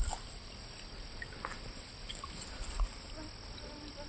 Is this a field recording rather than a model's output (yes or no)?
yes